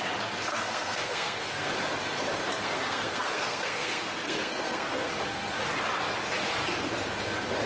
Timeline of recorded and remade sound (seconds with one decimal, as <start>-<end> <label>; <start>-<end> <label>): 0.0-0.5 recorded; 0.5-1.7 remade; 1.7-2.6 recorded; 2.6-5.1 remade; 5.1-7.7 recorded